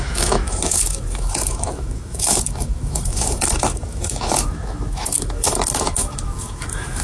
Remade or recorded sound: remade